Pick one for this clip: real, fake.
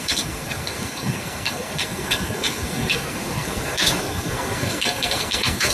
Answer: fake